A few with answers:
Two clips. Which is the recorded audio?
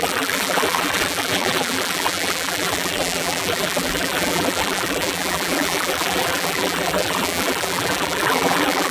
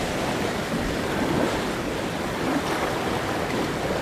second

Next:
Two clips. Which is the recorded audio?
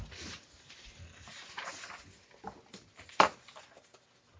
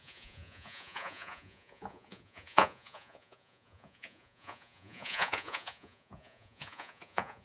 first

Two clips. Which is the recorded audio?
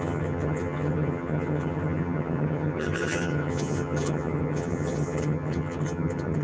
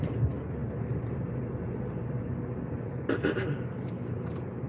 second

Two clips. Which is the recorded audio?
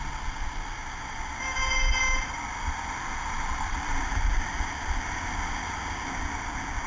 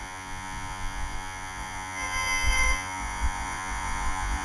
first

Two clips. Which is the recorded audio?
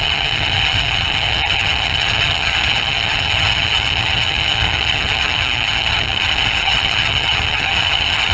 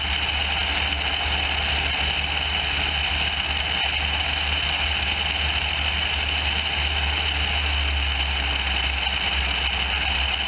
second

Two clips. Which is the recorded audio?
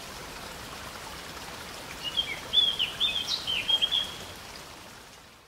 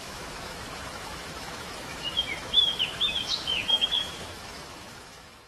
first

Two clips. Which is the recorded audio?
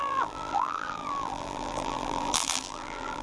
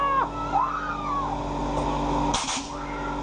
second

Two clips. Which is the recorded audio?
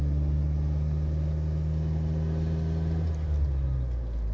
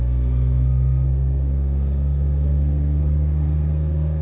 first